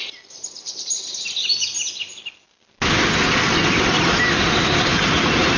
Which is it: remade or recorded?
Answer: recorded